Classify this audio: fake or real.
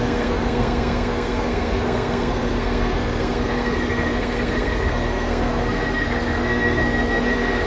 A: fake